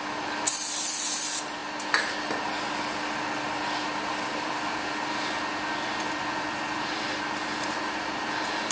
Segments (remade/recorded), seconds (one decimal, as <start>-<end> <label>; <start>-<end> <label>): 0.0-8.7 recorded